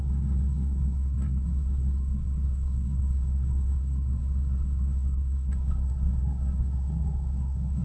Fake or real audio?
fake